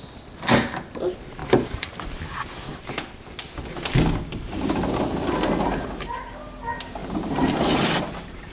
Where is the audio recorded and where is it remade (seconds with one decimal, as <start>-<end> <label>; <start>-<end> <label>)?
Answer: 0.0-1.4 recorded; 1.4-1.9 remade; 1.9-7.0 recorded; 7.0-7.9 remade; 7.9-8.5 recorded